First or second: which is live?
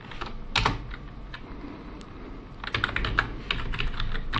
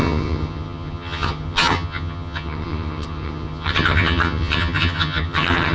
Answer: first